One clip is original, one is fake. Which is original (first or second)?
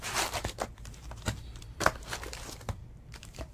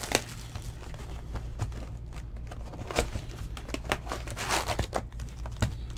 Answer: second